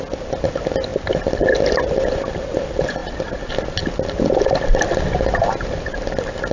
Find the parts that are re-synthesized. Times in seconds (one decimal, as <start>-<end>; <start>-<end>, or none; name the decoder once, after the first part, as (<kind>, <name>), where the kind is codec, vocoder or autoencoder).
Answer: none

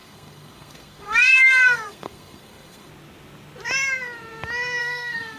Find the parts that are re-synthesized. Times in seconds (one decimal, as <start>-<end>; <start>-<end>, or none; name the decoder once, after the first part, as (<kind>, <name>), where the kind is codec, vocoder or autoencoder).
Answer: 0.0-2.9 (codec, SNAC); 4.8-5.4